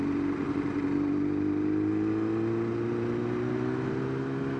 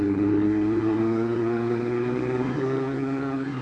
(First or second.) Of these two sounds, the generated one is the second